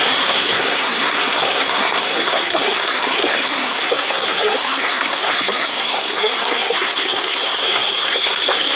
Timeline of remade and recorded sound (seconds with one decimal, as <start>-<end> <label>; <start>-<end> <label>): 0.0-8.8 remade